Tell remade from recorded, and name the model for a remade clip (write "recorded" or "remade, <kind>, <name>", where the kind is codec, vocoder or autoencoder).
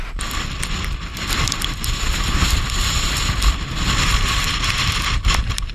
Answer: recorded